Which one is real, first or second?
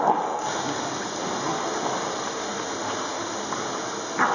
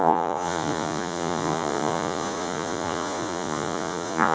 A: first